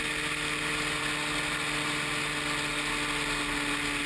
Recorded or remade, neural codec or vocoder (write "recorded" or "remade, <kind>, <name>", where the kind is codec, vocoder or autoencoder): recorded